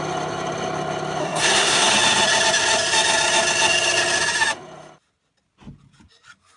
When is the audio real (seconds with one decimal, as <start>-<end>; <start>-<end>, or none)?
0.0-1.2; 1.9-6.6